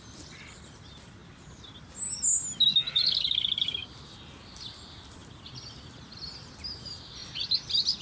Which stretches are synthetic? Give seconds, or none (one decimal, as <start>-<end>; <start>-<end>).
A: 0.0-1.2; 2.9-3.8; 4.4-7.2